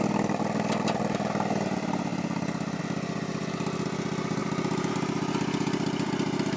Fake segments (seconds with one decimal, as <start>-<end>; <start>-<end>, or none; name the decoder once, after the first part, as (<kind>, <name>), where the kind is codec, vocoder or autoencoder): none